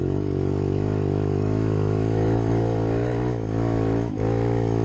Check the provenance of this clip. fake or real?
fake